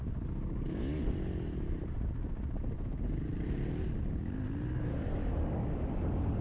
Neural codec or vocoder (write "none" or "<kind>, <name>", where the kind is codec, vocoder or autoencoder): none